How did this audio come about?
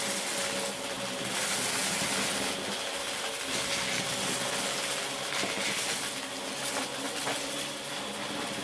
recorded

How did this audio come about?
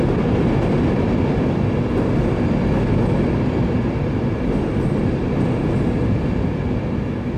recorded